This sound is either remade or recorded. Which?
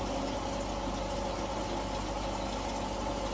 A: recorded